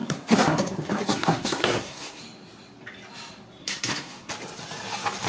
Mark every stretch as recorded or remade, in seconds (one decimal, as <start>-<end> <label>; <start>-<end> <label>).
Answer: 0.0-2.2 remade; 2.2-3.6 recorded; 3.6-4.3 remade; 4.3-5.3 recorded